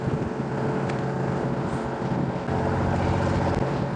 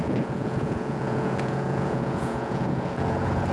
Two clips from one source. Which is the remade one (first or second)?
second